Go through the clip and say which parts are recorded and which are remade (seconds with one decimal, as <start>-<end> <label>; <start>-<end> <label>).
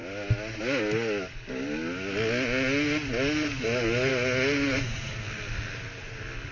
0.0-6.5 recorded